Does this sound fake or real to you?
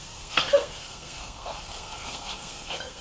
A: fake